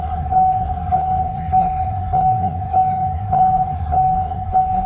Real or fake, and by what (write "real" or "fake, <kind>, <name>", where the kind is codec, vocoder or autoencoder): fake, codec, SNAC